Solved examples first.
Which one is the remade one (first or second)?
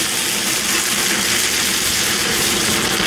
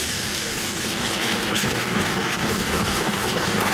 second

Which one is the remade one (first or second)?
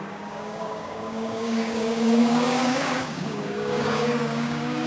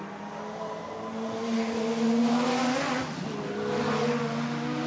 first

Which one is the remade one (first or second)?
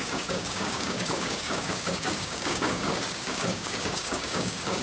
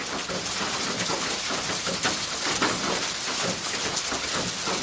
first